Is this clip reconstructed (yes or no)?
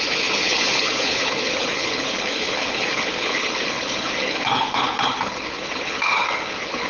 yes